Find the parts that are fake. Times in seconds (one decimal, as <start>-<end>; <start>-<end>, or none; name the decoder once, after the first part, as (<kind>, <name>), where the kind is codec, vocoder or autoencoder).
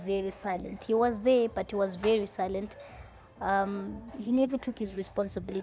0.0-0.8 (codec, SNAC); 4.2-5.6